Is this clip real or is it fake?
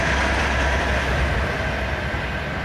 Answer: real